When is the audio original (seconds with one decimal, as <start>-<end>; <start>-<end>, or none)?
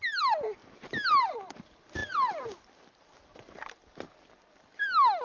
0.0-5.2